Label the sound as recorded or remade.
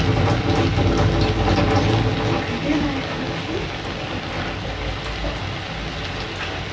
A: recorded